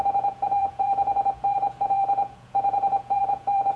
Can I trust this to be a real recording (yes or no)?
no